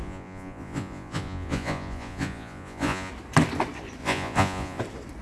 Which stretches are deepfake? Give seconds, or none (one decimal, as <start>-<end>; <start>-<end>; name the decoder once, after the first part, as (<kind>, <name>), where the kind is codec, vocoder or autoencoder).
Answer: 0.0-3.1 (vocoder, Vocos); 4.0-4.8